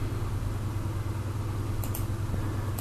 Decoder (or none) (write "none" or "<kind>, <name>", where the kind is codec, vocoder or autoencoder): none